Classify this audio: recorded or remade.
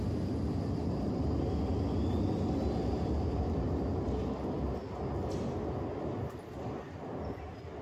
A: recorded